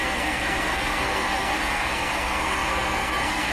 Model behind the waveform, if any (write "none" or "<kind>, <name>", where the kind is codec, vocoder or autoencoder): codec, SNAC